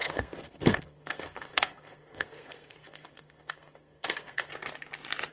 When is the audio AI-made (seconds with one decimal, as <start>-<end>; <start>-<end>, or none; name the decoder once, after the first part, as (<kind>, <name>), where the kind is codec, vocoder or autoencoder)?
0.0-4.5 (codec, SNAC)